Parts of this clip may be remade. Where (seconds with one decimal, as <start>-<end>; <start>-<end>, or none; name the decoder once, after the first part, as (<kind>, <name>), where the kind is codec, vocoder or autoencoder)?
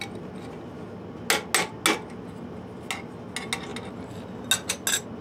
none